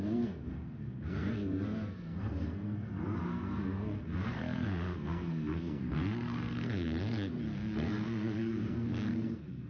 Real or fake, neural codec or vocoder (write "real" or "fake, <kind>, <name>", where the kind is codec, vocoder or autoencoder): fake, codec, SNAC